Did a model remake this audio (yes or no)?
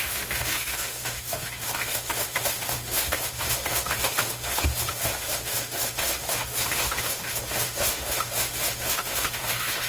yes